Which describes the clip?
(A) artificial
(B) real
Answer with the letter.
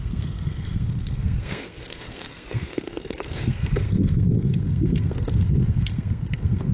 A